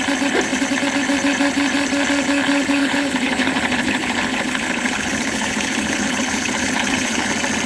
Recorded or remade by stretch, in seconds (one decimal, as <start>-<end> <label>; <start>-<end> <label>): 0.0-2.8 recorded; 2.8-7.3 remade; 7.3-7.7 recorded